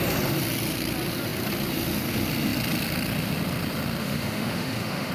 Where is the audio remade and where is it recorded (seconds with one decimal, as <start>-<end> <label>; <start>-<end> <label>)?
0.0-4.0 recorded; 4.0-5.1 remade